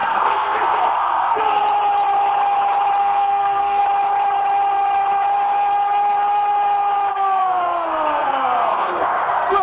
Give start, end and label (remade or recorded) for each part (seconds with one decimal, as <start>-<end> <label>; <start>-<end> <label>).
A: 0.0-1.6 remade; 1.6-3.0 recorded; 3.0-3.8 remade; 3.8-7.1 recorded; 7.1-9.6 remade

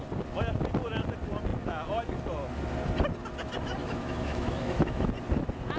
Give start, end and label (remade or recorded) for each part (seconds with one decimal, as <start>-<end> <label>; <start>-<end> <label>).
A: 0.0-3.8 recorded; 3.8-5.1 remade; 5.1-5.8 recorded

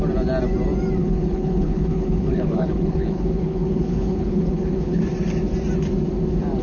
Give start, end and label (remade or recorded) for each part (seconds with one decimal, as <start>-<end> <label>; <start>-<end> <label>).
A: 0.0-1.0 recorded; 1.0-5.0 remade; 5.0-6.6 recorded